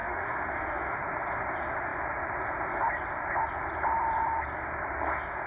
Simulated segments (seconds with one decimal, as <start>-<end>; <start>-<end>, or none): 0.0-1.0